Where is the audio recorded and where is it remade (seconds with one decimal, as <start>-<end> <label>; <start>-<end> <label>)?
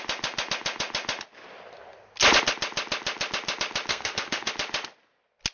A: 0.0-3.9 recorded; 3.9-4.5 remade; 4.5-5.5 recorded